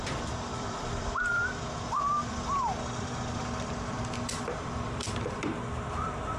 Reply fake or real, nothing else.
fake